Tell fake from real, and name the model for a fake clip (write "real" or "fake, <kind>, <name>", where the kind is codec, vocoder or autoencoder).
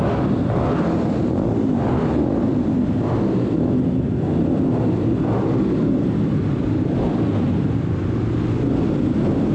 fake, vocoder, BigVGAN v2